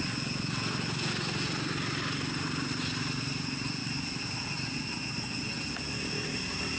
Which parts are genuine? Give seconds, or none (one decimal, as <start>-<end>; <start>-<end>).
0.0-6.8